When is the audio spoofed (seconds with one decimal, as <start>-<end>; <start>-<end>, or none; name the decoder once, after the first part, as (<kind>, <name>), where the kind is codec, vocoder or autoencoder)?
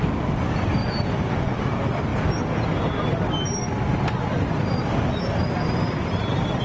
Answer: 0.0-0.8 (vocoder, BigVGAN v2); 1.4-2.1; 4.3-6.6